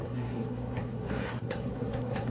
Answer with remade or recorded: remade